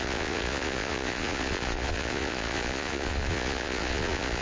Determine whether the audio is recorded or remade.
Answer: remade